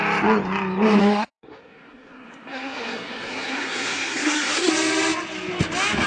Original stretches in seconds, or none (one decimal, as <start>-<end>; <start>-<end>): 0.0-1.0; 4.7-6.1